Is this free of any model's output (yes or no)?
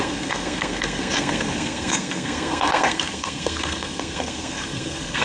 no